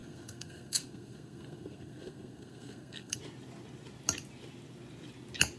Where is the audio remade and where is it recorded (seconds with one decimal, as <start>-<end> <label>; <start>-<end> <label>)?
0.0-3.2 remade; 3.2-5.6 recorded